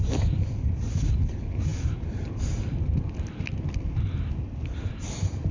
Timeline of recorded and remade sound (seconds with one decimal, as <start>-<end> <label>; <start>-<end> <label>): 0.0-5.5 recorded